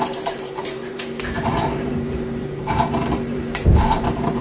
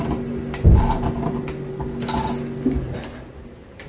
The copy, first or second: first